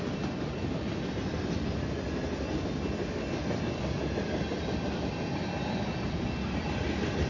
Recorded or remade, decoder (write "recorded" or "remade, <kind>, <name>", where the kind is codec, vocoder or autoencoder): recorded